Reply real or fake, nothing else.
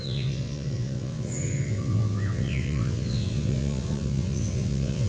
fake